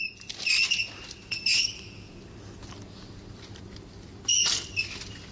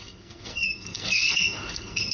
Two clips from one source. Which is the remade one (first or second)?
second